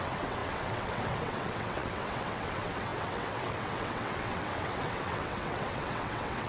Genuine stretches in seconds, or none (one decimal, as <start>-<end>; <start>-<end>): none